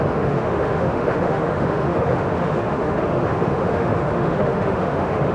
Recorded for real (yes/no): no